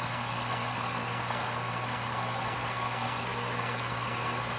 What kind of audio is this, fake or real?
fake